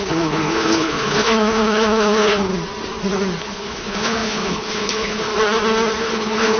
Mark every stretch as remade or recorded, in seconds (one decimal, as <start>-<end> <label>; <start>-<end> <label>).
0.0-2.5 remade; 2.5-3.4 recorded; 3.4-5.3 remade; 5.3-6.0 recorded; 6.0-6.6 remade